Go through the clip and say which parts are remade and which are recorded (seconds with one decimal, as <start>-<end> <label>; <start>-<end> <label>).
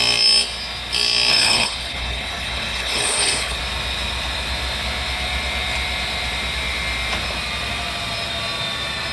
0.0-1.3 recorded; 1.3-3.6 remade; 3.6-9.1 recorded